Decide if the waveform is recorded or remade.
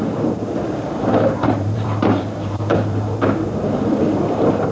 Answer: remade